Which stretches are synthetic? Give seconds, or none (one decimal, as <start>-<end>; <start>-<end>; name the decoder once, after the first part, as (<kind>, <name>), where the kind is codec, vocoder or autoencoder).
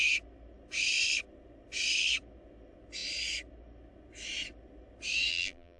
5.3-5.8 (vocoder, BigVGAN v2)